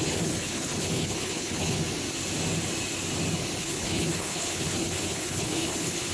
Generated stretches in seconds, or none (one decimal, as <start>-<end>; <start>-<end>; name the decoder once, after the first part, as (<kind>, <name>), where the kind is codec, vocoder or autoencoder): 0.0-1.8 (codec, HILCodec); 3.6-6.1